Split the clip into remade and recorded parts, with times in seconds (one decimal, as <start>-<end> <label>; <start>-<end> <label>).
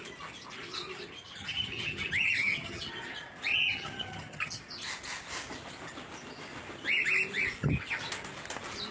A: 0.0-1.4 recorded; 1.4-2.9 remade; 2.9-3.5 recorded; 3.5-4.6 remade; 4.6-8.9 recorded